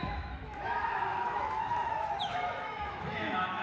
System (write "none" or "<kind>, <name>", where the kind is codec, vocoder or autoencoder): autoencoder, DAC-VAE